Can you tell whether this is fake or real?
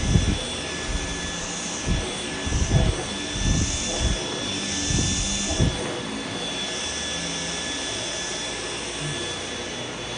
real